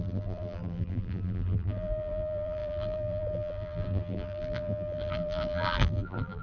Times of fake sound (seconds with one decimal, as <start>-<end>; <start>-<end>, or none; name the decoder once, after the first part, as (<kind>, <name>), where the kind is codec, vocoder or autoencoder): 0.0-6.4 (vocoder, BigVGAN v2)